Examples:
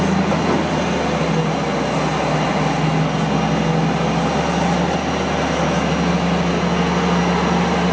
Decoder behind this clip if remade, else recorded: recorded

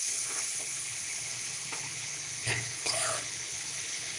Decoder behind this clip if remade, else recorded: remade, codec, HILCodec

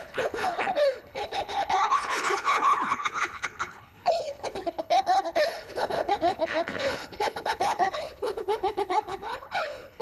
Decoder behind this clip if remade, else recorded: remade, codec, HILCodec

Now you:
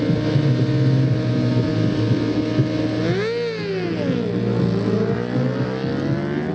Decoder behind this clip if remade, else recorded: recorded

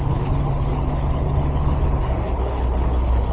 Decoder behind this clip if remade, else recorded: remade, codec, HILCodec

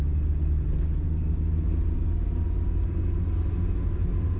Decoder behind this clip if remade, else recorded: recorded